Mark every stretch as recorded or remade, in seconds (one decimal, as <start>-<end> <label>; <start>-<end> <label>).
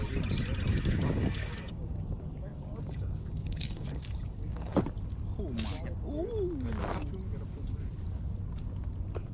0.0-0.7 recorded; 0.7-2.0 remade; 2.0-2.5 recorded; 2.5-4.7 remade; 4.7-9.3 recorded